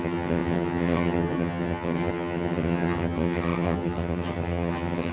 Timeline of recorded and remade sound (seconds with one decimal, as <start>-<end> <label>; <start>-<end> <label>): 0.0-5.1 remade